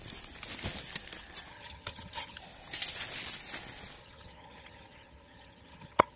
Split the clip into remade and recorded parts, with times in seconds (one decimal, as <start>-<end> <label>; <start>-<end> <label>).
0.0-1.5 recorded; 1.5-2.4 remade; 2.4-4.0 recorded; 4.0-6.2 remade

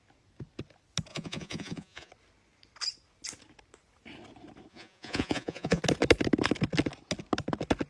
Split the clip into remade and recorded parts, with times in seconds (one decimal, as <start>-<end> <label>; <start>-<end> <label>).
0.0-1.1 recorded; 1.1-2.1 remade; 2.1-4.7 recorded; 4.7-5.8 remade; 5.8-7.9 recorded

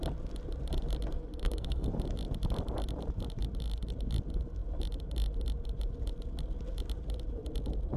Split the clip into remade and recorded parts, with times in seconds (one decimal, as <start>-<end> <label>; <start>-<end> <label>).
0.0-1.4 recorded; 1.4-1.9 remade; 1.9-8.0 recorded

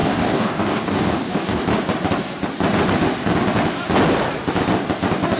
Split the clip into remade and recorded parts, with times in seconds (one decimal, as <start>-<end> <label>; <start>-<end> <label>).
0.0-1.6 remade; 1.6-5.4 recorded